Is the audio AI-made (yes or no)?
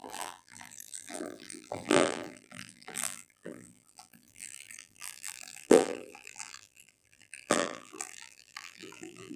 yes